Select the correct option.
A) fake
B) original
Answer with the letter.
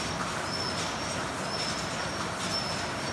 B